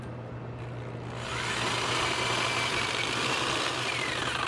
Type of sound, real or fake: real